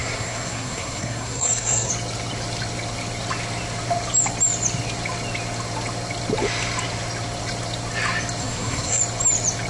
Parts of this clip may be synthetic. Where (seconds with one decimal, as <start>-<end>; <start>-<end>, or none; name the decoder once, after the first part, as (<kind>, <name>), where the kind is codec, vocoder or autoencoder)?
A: 0.0-1.9 (codec, SNAC); 8.4-9.0